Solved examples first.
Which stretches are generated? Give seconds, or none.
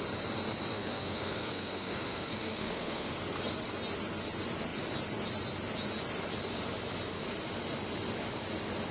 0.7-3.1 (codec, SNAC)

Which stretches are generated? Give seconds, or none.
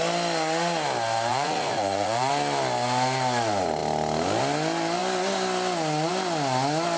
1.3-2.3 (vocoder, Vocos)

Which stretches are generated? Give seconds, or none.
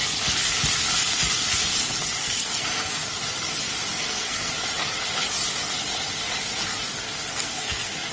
2.2-3.0 (codec, SNAC); 3.9-4.5; 7.3-8.1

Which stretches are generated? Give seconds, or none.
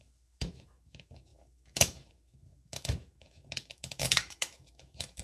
0.0-5.2 (autoencoder, DAC-VAE)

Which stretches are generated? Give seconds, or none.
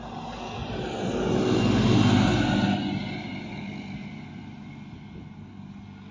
none